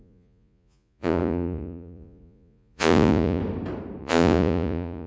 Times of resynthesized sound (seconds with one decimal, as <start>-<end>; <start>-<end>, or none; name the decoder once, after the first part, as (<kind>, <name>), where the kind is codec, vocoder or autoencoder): 0.0-3.4 (vocoder, Vocos); 4.0-5.1